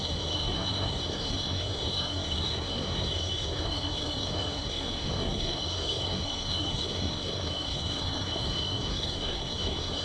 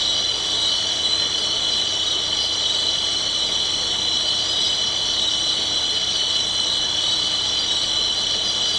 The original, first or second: second